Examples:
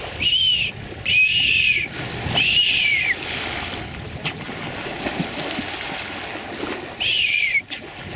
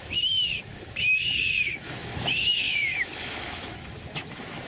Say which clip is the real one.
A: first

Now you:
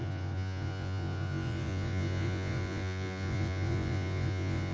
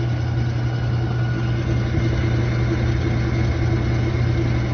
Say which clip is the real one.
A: second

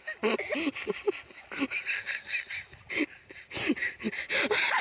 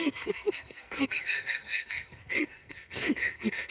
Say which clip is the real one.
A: first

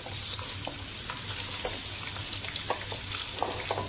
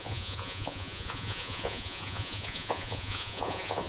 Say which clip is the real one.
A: first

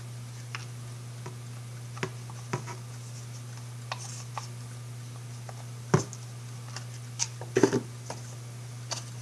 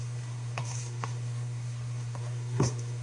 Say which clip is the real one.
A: first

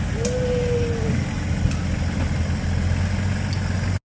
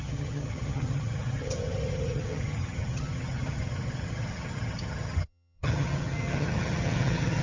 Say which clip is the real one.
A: first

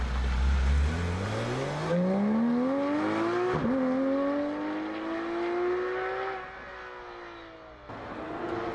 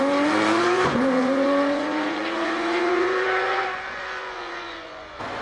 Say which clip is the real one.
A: first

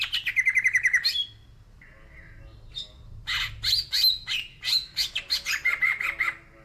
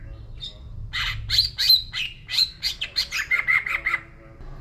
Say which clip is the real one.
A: first